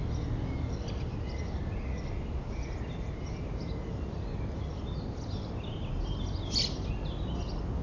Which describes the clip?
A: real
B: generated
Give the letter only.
A